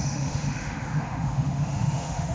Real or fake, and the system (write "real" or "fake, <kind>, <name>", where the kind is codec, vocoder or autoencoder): fake, autoencoder, DAC-VAE